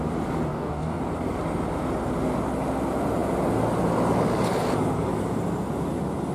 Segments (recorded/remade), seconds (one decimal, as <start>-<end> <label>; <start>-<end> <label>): 0.0-0.5 recorded; 0.5-1.0 remade; 1.0-6.3 recorded